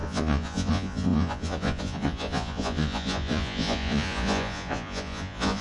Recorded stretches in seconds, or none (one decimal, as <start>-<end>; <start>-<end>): none